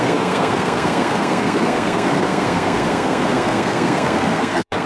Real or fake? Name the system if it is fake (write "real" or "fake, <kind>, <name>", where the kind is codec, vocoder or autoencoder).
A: fake, codec, SNAC